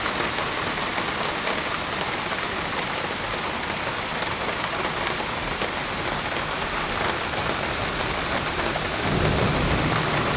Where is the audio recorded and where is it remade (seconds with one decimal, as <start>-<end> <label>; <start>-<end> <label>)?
0.0-10.4 recorded